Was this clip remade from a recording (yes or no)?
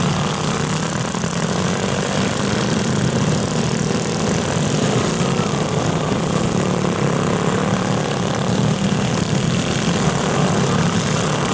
no